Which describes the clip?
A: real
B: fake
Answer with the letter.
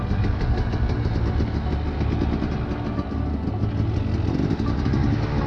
A